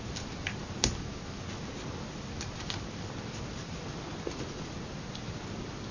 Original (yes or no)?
yes